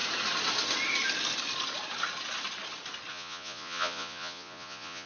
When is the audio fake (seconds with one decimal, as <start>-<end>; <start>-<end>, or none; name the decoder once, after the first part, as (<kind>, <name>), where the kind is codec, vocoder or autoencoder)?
3.1-5.1 (vocoder, Vocos)